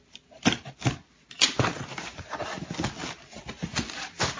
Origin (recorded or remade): recorded